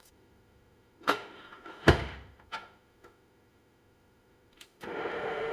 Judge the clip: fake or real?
fake